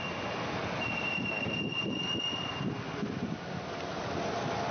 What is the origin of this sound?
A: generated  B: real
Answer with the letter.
B